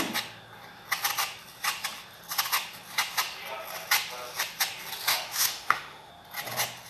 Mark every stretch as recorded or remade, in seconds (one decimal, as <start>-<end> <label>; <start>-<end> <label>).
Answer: 0.0-5.1 recorded; 5.1-6.1 remade; 6.1-6.9 recorded